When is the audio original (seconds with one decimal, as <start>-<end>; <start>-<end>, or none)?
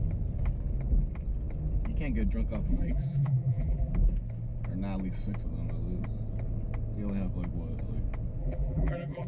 0.0-2.7; 3.9-8.4